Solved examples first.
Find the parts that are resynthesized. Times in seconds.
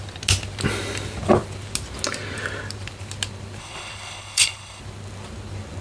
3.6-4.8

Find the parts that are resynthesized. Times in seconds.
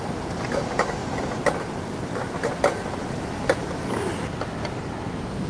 0.0-1.0; 4.3-5.5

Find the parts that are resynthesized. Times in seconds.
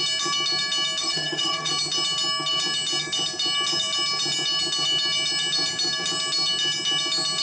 1.0-1.7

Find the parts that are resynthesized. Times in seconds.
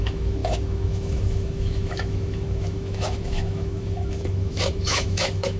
0.0-5.6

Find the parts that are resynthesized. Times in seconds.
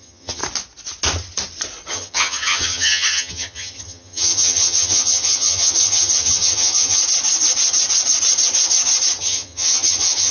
0.0-0.4; 1.9-7.0; 9.2-10.3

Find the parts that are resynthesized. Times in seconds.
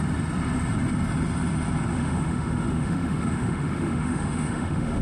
1.9-5.0